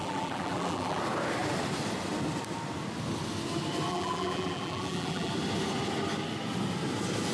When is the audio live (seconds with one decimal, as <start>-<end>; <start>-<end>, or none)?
1.0-3.9; 5.3-7.3

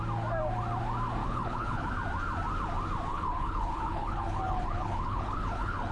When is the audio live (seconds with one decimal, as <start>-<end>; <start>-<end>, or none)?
0.0-1.2; 1.9-3.1

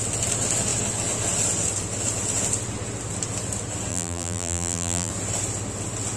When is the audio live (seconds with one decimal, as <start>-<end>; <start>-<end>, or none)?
0.0-3.9; 5.1-6.2

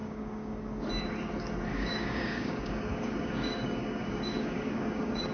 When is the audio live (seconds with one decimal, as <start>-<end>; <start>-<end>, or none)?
0.7-1.7